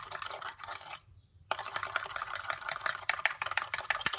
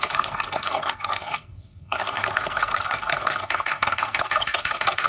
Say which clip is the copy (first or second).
second